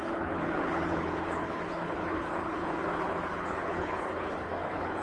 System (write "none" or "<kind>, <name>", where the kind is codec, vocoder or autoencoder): codec, HILCodec